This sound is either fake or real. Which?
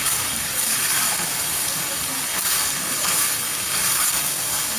fake